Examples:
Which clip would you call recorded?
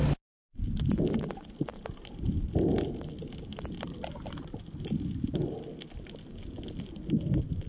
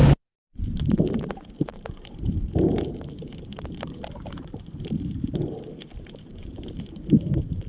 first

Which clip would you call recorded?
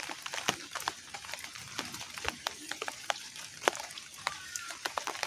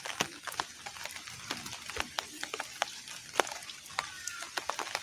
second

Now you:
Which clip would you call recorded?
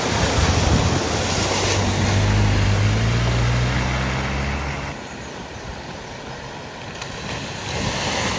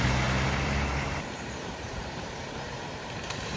first